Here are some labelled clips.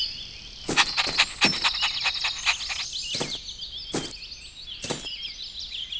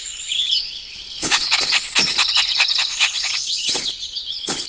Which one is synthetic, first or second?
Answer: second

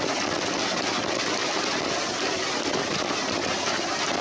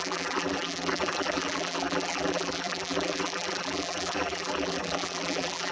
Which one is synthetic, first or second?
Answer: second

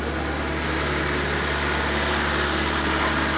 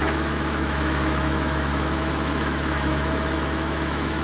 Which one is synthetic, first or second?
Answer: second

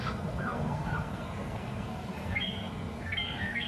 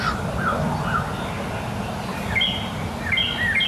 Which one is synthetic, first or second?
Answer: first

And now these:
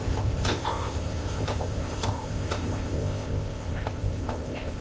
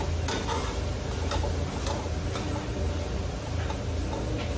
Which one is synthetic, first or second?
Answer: first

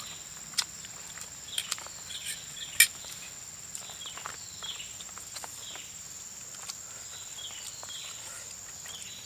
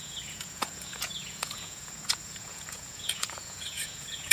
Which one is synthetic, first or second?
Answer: second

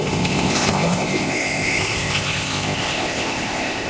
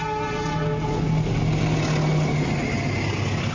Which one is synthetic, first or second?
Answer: first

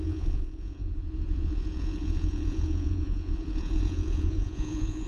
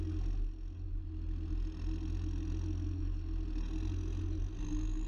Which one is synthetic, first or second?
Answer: first